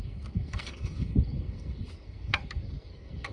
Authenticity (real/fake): fake